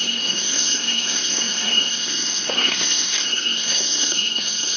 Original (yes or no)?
no